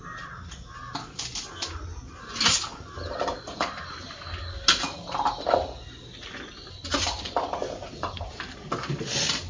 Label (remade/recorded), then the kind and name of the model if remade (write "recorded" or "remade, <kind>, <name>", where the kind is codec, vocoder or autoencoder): recorded